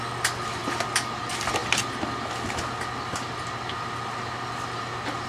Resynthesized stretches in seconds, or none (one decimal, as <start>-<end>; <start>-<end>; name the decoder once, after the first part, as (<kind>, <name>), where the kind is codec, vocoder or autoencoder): none